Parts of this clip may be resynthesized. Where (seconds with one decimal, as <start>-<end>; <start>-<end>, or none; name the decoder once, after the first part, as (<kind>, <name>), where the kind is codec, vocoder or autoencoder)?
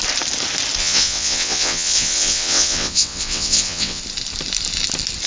0.8-4.0 (vocoder, WaveNeXt)